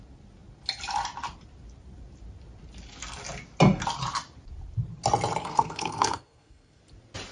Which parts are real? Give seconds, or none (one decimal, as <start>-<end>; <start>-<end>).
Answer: 0.0-5.4; 6.8-7.3